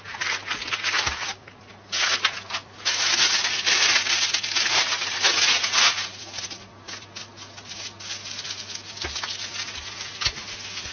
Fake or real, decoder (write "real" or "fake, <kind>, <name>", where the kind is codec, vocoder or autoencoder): real